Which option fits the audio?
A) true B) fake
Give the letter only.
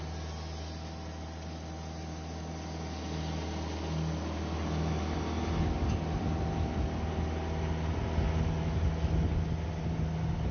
A